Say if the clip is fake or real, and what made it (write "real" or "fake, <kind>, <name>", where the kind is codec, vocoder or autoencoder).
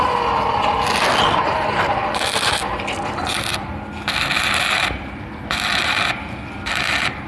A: real